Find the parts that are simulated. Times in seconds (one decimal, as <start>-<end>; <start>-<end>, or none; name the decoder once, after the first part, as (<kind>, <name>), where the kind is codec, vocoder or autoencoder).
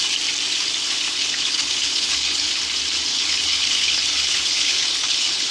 0.8-2.5 (codec, HILCodec); 3.1-5.5